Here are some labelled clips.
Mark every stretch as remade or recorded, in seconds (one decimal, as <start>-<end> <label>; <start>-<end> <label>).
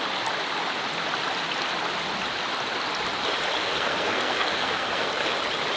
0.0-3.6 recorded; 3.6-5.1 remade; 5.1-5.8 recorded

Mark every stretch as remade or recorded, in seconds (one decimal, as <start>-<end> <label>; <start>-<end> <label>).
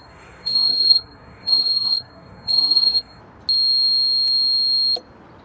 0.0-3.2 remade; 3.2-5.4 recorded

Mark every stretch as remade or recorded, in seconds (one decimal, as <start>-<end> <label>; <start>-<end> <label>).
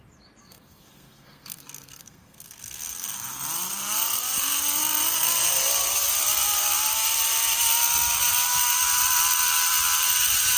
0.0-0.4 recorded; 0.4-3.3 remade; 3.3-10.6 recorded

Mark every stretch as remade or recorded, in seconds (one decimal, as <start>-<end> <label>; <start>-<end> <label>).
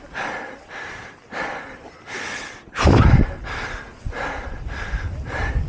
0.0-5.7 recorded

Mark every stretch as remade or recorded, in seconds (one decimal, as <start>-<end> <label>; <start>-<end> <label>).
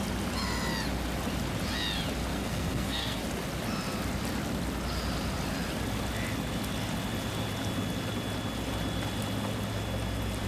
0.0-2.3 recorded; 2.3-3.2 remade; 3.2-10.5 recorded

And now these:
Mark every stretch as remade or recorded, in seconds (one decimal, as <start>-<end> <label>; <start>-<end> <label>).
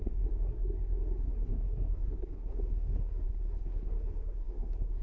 0.0-5.0 remade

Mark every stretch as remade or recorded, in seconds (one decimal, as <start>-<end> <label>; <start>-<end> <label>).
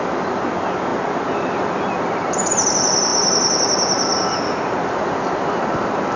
0.0-6.2 recorded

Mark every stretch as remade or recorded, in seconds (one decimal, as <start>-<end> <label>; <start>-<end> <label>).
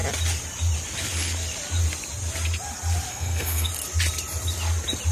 0.0-3.1 recorded; 3.1-3.7 remade; 3.7-5.1 recorded